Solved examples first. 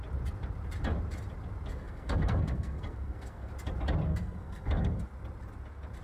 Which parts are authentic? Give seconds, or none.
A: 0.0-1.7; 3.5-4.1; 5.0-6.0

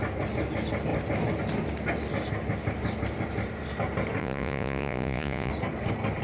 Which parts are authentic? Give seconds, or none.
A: 0.0-4.2; 5.5-6.2

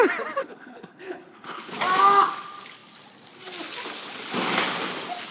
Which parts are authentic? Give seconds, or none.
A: 0.0-0.4; 1.7-5.3

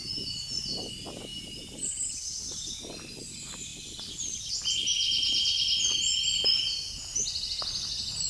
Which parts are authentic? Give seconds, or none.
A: 0.0-8.3

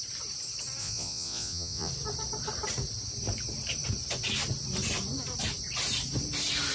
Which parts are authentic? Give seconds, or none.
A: 0.0-0.8; 1.9-6.7